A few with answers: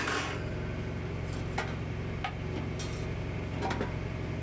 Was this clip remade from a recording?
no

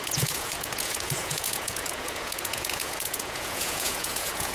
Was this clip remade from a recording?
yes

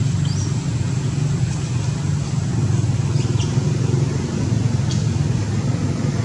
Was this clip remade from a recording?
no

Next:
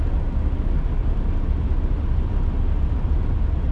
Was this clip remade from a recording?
no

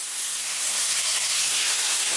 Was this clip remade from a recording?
yes